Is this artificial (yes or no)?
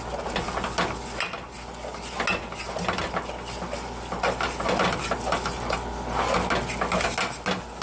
no